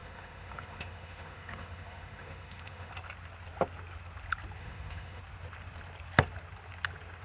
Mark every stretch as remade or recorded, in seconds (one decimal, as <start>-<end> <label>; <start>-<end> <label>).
0.0-2.9 remade; 2.9-4.6 recorded; 4.6-5.2 remade; 5.2-7.2 recorded